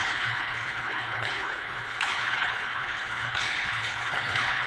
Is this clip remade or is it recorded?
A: remade